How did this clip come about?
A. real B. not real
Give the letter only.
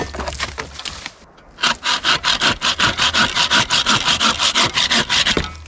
A